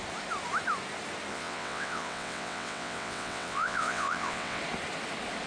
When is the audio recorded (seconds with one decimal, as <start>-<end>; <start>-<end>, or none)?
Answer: 0.0-1.3; 4.6-5.5